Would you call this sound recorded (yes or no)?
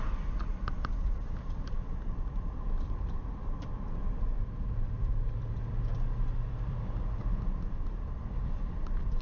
no